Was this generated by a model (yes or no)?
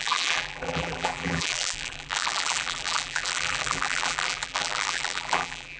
yes